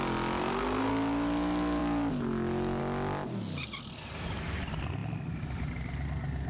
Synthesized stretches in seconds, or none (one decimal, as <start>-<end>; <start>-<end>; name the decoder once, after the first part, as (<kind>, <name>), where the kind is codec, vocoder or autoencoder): 0.4-0.9 (codec, SNAC)